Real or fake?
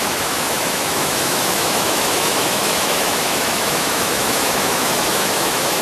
fake